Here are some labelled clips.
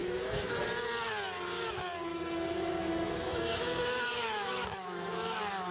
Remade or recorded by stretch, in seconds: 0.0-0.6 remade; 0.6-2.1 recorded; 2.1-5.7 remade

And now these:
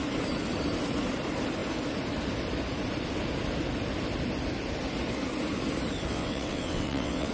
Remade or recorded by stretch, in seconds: 0.0-6.1 recorded; 6.1-7.3 remade